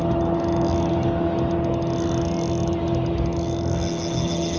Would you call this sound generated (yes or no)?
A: no